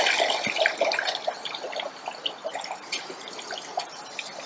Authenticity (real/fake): real